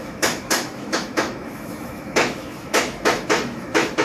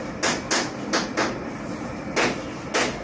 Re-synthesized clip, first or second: first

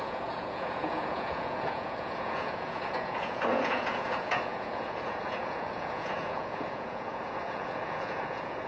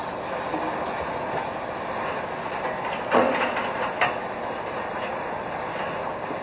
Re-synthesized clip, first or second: first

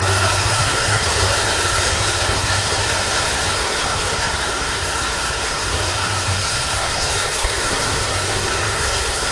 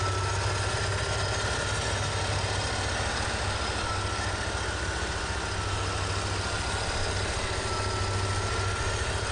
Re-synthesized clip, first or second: first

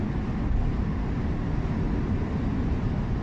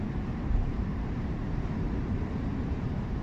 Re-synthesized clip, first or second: second